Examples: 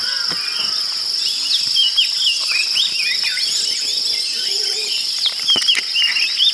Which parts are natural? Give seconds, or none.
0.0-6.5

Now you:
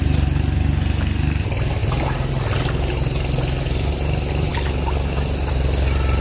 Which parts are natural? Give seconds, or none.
0.0-6.2

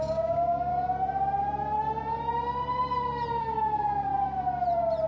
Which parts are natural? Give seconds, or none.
0.7-3.4; 4.1-5.1

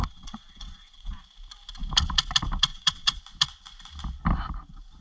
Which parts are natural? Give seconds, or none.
1.2-2.7; 3.2-5.0

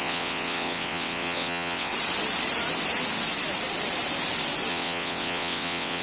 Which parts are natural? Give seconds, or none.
1.9-4.7